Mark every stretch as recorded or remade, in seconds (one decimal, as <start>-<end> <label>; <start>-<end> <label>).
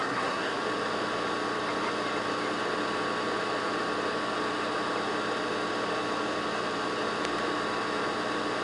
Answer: 0.0-0.6 remade; 0.6-8.6 recorded